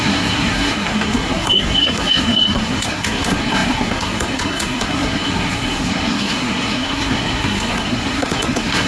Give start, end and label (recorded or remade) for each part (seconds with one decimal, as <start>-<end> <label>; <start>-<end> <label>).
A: 0.0-8.9 remade